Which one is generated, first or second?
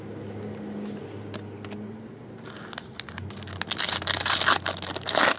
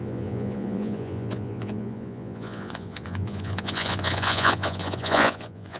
second